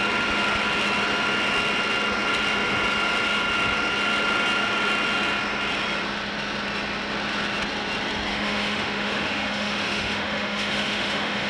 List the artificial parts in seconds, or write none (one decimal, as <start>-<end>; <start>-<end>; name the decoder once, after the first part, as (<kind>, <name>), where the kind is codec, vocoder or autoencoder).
8.3-11.5 (autoencoder, DAC-VAE)